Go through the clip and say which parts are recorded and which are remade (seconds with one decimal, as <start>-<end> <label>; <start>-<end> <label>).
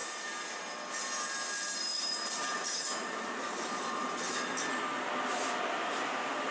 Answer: 0.0-0.6 remade; 0.6-1.9 recorded; 1.9-4.2 remade; 4.2-6.5 recorded